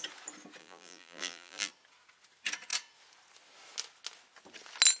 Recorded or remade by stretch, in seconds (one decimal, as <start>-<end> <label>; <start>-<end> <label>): 0.0-0.6 recorded; 0.6-1.7 remade; 1.7-5.0 recorded